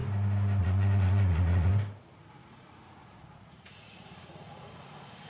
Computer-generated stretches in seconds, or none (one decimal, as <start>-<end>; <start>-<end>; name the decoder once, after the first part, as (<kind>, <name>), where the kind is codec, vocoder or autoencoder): 0.6-1.7 (vocoder, Vocos); 2.3-5.3